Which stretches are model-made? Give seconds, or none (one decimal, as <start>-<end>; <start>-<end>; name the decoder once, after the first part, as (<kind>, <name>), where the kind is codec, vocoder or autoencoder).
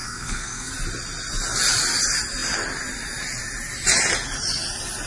0.0-0.7 (codec, SNAC)